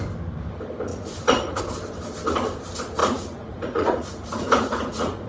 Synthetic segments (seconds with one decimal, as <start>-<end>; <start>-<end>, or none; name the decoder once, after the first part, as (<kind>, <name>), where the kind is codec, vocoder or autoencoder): 0.9-1.6 (vocoder, Vocos); 3.0-5.3